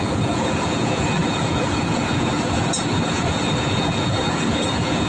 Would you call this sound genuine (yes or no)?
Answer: no